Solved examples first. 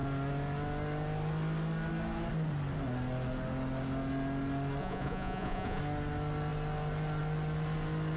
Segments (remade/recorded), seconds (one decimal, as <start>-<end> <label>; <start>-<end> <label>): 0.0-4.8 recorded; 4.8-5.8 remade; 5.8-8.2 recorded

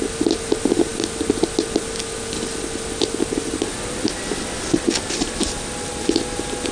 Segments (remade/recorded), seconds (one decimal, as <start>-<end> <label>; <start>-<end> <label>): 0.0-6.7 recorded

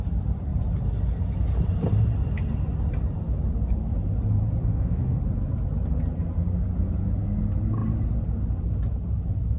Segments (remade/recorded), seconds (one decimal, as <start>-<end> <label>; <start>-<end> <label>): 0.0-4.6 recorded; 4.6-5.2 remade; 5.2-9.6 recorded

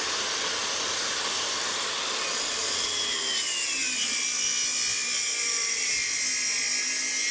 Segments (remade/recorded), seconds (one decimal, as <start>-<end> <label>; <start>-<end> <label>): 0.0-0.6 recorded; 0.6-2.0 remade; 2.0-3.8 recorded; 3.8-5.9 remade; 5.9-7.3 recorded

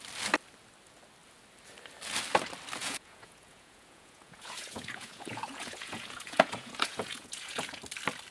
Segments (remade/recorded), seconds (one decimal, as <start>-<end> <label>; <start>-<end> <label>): 0.0-2.8 recorded; 2.8-7.8 remade; 7.8-8.3 recorded